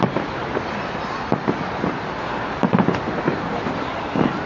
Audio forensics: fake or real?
real